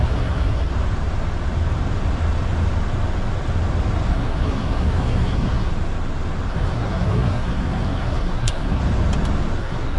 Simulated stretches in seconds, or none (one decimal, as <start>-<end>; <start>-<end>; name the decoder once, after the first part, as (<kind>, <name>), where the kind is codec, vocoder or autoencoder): 0.0-0.7 (codec, SNAC); 4.1-5.7; 6.5-8.8; 9.6-10.0